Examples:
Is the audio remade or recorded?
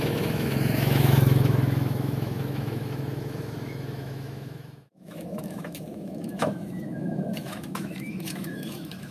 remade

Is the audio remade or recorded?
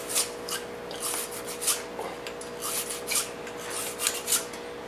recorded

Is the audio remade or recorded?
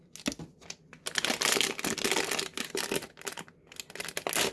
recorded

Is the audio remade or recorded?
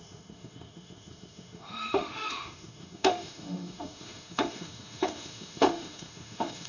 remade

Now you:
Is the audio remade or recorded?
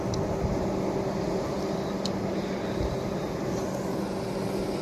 recorded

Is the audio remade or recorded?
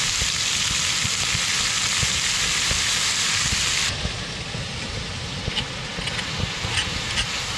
recorded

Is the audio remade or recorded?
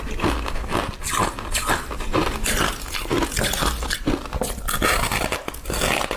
recorded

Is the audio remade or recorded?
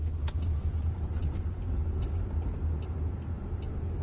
recorded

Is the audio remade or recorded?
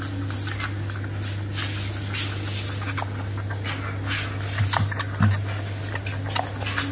recorded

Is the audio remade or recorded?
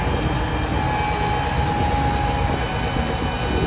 recorded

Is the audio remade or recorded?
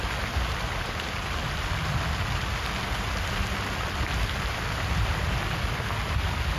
recorded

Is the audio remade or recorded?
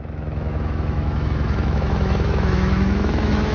remade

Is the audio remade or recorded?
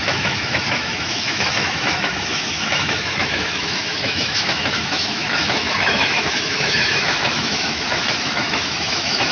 remade